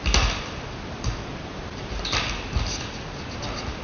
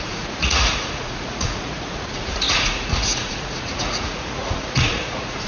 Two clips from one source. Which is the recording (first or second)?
first